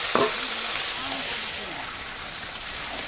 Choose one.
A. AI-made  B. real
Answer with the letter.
B